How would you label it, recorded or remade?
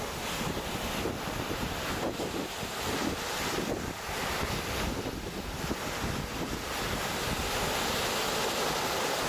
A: recorded